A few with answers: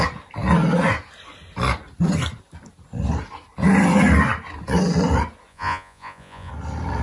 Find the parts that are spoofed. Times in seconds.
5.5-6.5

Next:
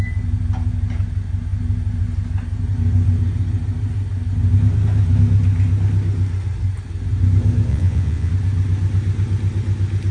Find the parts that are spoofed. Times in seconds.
7.7-8.3

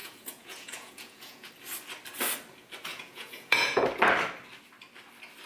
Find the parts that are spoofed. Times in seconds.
0.0-1.5; 2.9-3.8

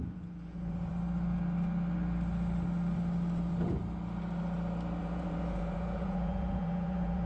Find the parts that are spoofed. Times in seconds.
0.0-0.9; 5.0-7.3

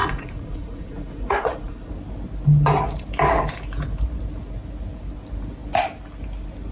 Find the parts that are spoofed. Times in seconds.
0.0-1.9

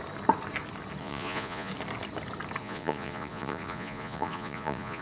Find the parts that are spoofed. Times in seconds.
1.0-1.7; 2.6-5.0

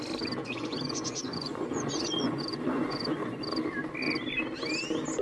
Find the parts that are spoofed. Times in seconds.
0.4-3.4